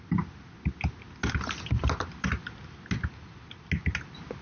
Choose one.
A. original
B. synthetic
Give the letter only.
A